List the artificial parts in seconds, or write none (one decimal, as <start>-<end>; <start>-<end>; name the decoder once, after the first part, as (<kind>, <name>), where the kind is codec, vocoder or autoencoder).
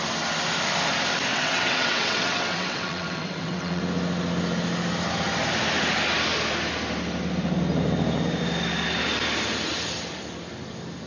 1.3-3.8 (vocoder, WaveNeXt)